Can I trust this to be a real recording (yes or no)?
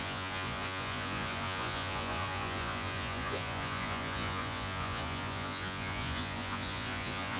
no